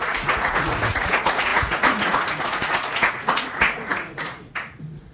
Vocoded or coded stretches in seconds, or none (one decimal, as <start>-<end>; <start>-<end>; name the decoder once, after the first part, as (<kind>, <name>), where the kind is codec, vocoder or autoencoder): 0.0-5.1 (vocoder, Vocos)